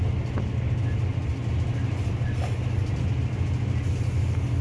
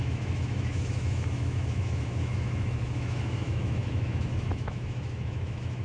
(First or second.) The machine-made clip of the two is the second